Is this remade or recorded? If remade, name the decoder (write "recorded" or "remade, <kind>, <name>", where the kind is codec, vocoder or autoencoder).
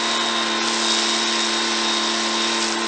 recorded